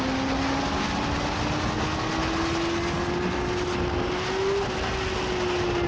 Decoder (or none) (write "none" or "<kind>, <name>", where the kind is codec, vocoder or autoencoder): none